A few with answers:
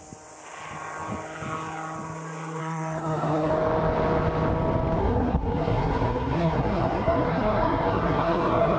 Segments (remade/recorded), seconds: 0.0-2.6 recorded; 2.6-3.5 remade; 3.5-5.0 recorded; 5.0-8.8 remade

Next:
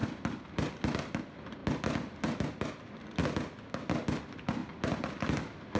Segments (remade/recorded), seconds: 0.0-5.8 recorded

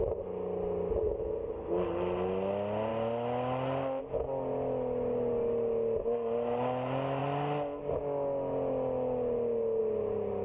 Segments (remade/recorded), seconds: 0.0-10.4 recorded